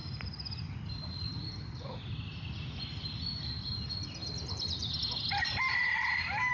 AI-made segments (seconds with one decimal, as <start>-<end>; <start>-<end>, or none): 0.0-3.9; 4.8-6.5